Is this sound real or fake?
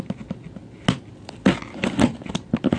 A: real